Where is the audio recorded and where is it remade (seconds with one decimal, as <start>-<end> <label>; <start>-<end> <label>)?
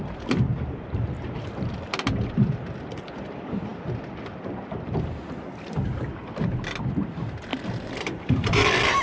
0.0-0.5 recorded; 0.5-1.4 remade; 1.4-7.5 recorded; 7.5-8.6 remade; 8.6-9.0 recorded